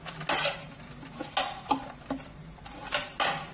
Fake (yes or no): no